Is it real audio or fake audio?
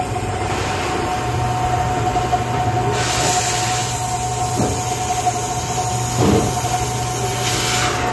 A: real